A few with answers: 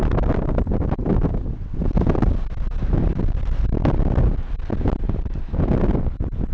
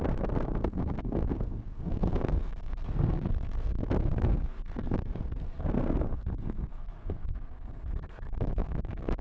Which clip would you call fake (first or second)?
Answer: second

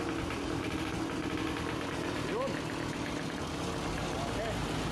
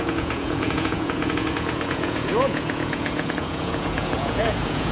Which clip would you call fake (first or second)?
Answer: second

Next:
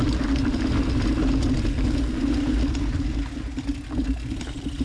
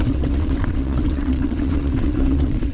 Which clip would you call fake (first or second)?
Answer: second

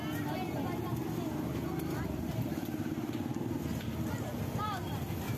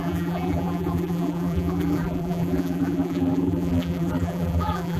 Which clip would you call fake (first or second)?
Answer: second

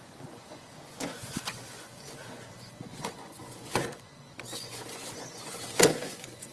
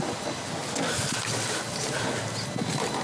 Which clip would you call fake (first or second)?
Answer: first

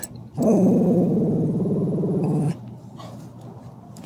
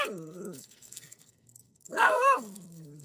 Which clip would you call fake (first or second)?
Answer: second